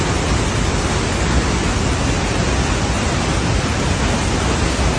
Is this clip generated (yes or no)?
no